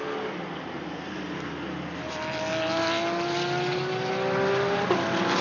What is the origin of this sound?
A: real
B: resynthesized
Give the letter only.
A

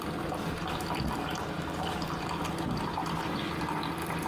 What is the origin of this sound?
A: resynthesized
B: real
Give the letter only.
B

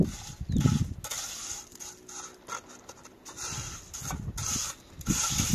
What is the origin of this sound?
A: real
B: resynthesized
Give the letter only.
A